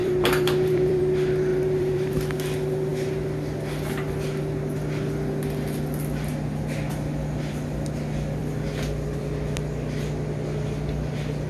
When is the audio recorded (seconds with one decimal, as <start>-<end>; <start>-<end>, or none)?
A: 1.0-1.5; 2.1-11.5